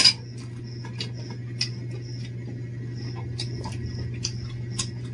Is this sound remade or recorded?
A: recorded